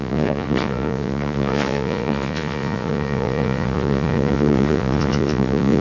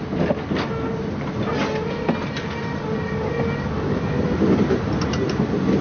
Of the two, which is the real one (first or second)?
second